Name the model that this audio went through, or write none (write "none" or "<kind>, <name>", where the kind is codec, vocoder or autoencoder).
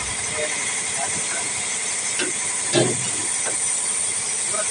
none